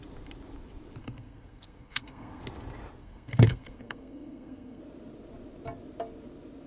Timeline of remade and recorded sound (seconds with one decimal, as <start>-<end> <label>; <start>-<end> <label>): 0.0-1.0 recorded; 1.0-2.4 remade; 2.4-3.0 recorded; 3.0-4.8 remade; 4.8-6.7 recorded